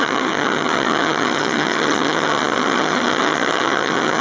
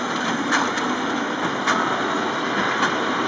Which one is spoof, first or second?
first